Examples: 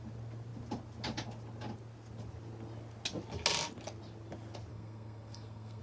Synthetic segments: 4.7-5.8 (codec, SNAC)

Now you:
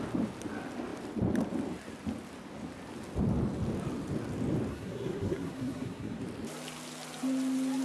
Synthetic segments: 4.7-6.2 (codec, SNAC)

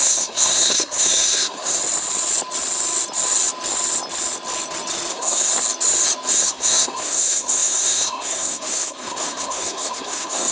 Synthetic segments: 0.0-1.8 (codec, SNAC); 5.1-5.5; 6.3-10.5

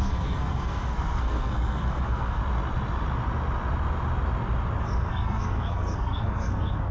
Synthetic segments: 0.0-2.4 (codec, SNAC); 4.8-6.9

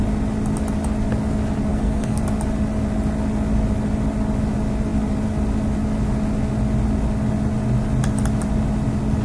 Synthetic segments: 1.7-2.2 (codec, SNAC)

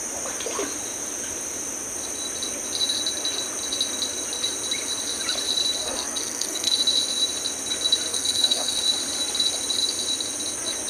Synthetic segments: 5.8-6.7 (codec, SNAC); 8.1-8.8

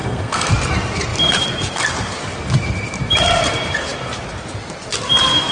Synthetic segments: 0.0-0.5 (codec, SNAC)

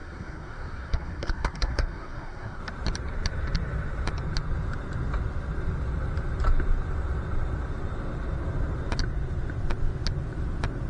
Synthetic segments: 0.0-2.6 (codec, SNAC)